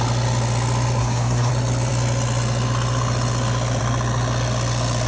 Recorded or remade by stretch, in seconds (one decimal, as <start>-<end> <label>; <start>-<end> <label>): 0.0-1.0 recorded; 1.0-1.5 remade; 1.5-5.1 recorded